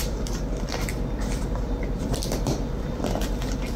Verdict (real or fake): fake